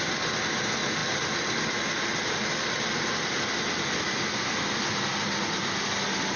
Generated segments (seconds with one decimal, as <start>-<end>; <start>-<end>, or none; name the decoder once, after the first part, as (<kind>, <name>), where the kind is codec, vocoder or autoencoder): none

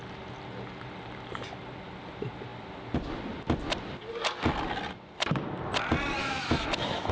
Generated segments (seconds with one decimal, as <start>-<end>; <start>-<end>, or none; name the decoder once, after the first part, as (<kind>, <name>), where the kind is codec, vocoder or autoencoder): 6.2-7.1 (autoencoder, DAC-VAE)

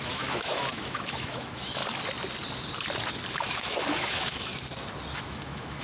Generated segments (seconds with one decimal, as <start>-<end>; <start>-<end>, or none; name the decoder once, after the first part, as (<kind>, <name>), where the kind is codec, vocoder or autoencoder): 0.0-1.8 (autoencoder, DAC-VAE); 3.3-4.5; 5.1-5.8

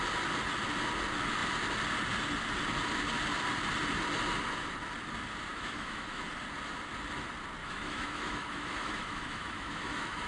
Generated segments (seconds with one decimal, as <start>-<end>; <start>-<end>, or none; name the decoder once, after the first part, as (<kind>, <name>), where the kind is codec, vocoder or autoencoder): 5.5-6.2 (autoencoder, DAC-VAE); 7.6-10.3

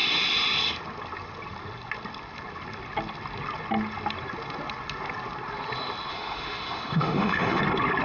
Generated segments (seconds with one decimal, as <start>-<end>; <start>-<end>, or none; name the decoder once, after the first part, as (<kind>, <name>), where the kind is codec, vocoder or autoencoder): 6.1-7.6 (autoencoder, DAC-VAE)

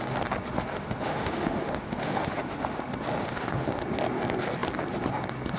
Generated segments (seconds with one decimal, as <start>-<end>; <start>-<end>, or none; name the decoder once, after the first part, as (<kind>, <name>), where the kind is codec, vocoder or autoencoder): 0.7-2.8 (autoencoder, DAC-VAE); 3.2-3.8